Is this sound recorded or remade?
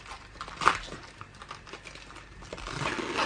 recorded